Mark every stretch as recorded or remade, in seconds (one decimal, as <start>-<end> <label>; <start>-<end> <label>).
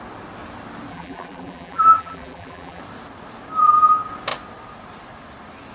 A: 0.0-0.9 recorded; 0.9-2.8 remade; 2.8-5.7 recorded